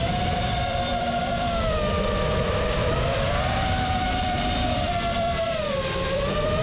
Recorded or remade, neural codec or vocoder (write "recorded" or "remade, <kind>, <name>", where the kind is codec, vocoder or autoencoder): remade, vocoder, BigVGAN v2